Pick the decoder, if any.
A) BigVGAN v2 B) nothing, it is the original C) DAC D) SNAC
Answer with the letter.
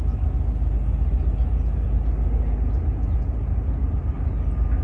B